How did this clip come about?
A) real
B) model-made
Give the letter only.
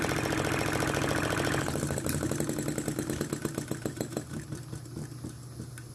A